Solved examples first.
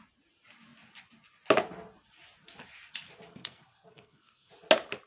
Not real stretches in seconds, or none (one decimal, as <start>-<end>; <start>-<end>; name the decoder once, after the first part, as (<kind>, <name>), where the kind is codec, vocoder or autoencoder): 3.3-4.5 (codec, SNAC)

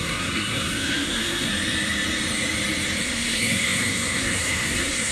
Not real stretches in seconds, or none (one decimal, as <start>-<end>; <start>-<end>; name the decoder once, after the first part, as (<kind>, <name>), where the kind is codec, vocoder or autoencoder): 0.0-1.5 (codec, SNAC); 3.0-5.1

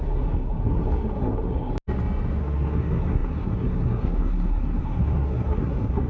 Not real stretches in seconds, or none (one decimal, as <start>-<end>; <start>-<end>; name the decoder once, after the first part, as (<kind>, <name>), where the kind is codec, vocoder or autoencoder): 0.0-1.7 (codec, SNAC); 2.4-6.1

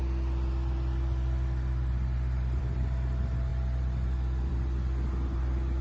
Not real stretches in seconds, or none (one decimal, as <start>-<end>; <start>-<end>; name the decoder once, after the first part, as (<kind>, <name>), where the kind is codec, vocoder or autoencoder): none

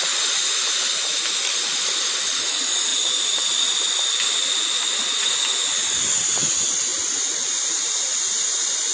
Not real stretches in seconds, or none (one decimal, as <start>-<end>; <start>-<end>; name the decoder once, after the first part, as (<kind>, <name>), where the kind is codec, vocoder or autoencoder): none

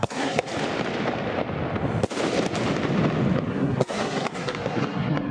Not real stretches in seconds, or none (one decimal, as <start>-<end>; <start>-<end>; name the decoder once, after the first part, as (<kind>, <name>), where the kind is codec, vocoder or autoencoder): 0.0-0.5 (codec, SNAC); 3.5-5.3